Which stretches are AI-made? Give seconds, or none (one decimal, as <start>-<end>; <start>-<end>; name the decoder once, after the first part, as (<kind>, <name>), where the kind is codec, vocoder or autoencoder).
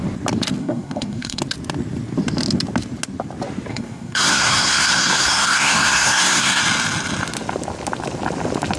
0.6-1.4 (codec, SNAC); 3.7-6.6